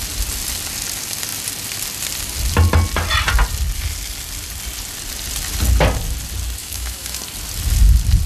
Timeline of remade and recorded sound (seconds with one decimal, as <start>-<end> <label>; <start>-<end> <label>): 0.0-6.6 recorded; 6.6-7.2 remade; 7.2-8.3 recorded